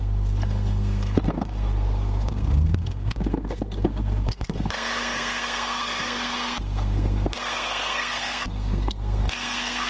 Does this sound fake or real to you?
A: fake